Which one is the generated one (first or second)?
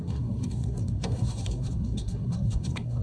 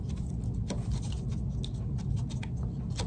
first